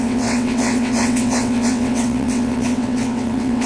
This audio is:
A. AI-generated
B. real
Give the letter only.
A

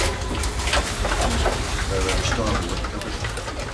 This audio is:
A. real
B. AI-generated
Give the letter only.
A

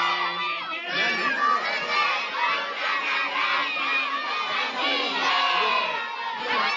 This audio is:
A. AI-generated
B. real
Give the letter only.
B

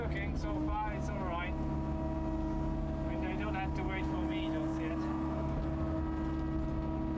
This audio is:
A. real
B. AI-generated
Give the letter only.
A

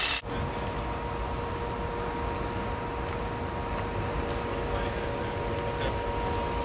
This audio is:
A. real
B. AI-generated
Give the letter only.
A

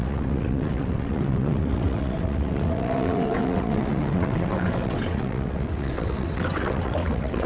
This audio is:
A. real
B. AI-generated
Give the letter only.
B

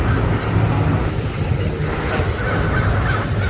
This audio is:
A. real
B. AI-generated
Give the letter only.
A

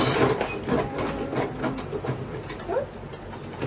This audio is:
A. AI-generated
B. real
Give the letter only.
B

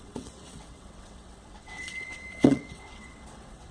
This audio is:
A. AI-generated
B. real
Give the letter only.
A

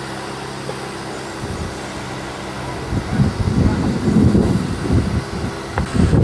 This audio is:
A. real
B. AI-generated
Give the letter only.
A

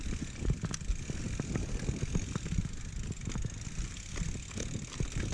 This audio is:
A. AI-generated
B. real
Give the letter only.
B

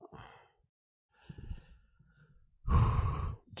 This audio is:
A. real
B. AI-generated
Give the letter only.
B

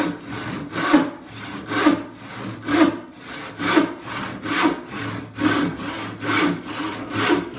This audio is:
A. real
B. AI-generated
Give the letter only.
A